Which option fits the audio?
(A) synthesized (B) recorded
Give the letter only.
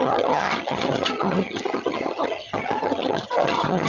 A